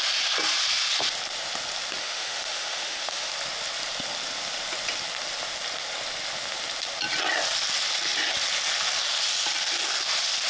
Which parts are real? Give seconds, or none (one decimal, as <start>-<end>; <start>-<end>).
0.0-2.0; 3.3-10.5